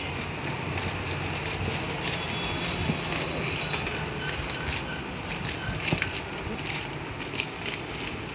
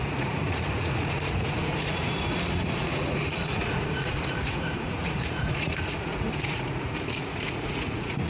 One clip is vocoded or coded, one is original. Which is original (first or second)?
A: first